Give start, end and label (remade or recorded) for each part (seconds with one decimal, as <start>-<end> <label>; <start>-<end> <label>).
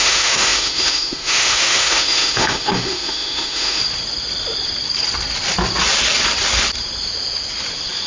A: 0.0-3.8 remade; 3.8-8.1 recorded